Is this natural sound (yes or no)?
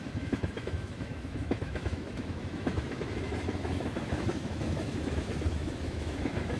no